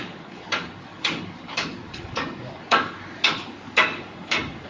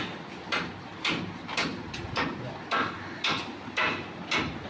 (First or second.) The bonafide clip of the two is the second